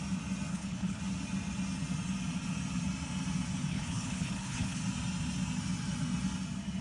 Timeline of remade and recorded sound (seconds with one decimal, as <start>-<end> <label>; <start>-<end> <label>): 0.0-0.5 recorded; 0.5-1.0 remade; 1.0-3.7 recorded; 3.7-4.8 remade; 4.8-6.8 recorded